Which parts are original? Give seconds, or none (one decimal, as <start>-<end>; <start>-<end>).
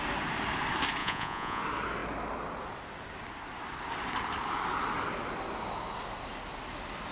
0.0-1.0; 1.6-7.1